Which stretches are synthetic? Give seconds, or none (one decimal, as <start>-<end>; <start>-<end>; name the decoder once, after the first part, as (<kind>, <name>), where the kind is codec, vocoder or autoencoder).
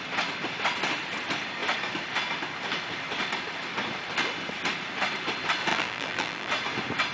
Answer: 5.7-6.5 (vocoder, BigVGAN v2)